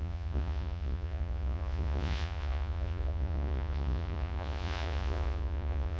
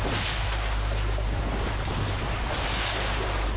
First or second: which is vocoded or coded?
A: first